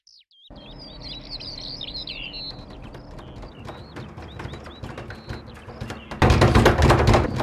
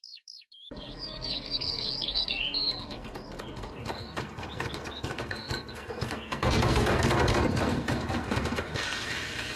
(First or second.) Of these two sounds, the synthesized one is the second